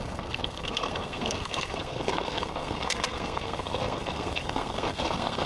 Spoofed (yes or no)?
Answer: yes